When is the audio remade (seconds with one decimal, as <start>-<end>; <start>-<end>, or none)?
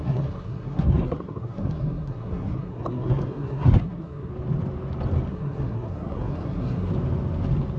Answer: 0.0-4.3; 5.3-6.9